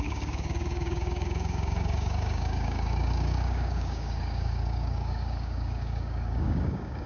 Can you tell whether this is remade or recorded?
remade